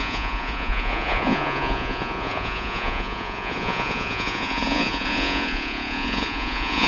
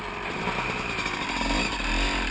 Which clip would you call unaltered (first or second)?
second